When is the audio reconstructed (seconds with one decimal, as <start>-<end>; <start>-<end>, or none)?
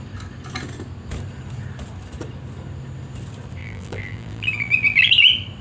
3.6-5.1